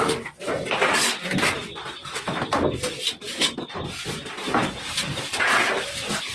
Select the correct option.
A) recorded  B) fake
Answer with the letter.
A